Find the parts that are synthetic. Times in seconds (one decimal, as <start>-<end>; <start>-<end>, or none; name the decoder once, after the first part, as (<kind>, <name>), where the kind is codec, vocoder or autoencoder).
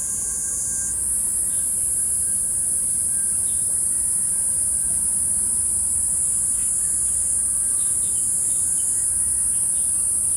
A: none